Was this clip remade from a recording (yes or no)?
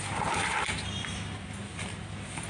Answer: no